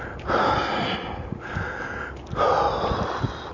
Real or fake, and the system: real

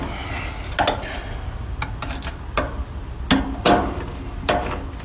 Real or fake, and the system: real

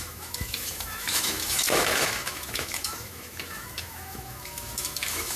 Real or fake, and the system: fake, autoencoder, DAC-VAE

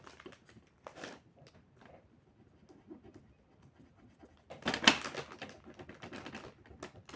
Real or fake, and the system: real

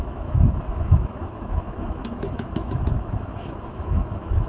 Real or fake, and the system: fake, autoencoder, DAC-VAE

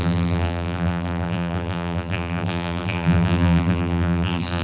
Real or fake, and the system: fake, vocoder, BigVGAN v2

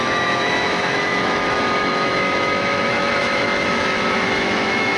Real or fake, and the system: fake, autoencoder, DAC-VAE